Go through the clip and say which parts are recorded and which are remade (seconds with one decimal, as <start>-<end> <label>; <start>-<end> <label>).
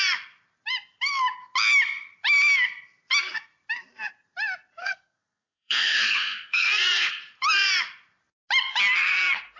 0.0-4.8 recorded; 4.8-7.1 remade; 7.1-9.6 recorded